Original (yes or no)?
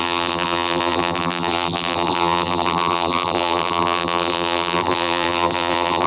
no